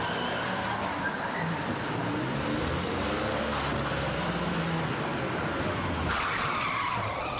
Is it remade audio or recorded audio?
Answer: remade